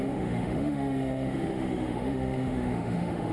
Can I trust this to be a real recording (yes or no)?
no